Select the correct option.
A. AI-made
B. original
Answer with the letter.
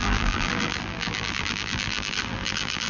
A